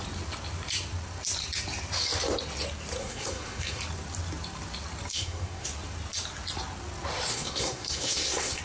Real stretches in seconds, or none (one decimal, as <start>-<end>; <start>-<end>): 0.0-3.0; 3.8-5.1; 5.7-7.3